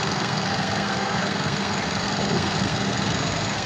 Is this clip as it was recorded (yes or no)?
no